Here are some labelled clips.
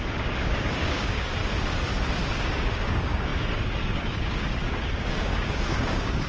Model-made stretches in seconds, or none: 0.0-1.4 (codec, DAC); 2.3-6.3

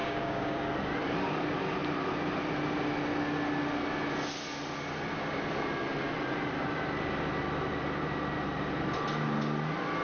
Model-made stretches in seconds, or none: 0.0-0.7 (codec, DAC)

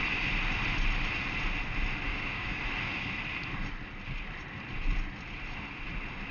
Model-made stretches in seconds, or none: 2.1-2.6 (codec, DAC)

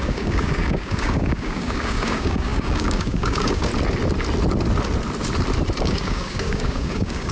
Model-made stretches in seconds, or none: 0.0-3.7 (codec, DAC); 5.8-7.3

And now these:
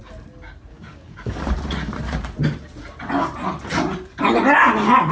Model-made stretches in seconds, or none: 0.7-1.5 (codec, DAC)